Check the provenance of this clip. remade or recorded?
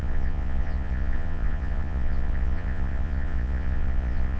remade